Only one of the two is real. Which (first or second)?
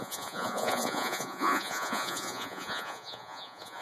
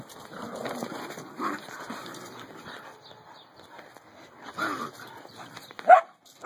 second